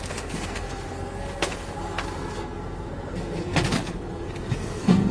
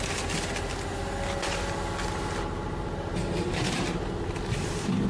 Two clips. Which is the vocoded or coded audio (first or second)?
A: first